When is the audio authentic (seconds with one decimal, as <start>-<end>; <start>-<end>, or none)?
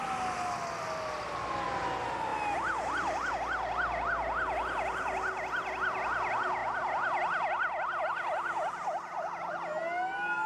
0.0-10.5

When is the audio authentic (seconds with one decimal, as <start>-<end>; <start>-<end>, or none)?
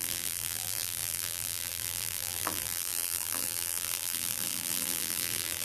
none